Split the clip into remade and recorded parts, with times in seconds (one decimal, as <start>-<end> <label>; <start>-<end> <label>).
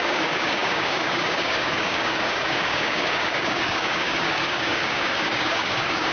0.0-6.1 remade